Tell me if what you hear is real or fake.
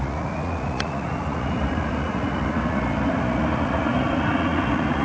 fake